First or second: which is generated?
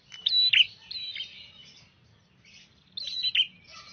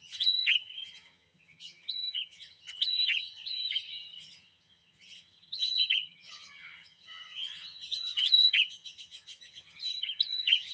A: second